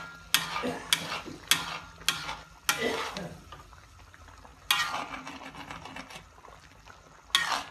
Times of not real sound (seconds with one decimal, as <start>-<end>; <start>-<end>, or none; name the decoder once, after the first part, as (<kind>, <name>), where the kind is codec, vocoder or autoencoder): none